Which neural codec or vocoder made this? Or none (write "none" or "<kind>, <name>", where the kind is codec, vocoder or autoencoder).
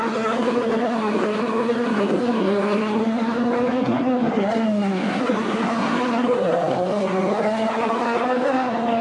codec, SNAC